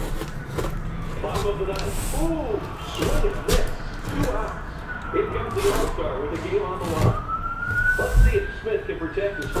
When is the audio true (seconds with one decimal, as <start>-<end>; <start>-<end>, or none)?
none